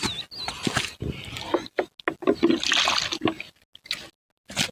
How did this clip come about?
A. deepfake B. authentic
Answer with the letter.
B